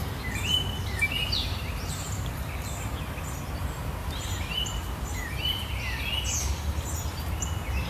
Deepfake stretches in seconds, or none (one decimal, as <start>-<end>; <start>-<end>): 0.0-2.8; 4.0-5.8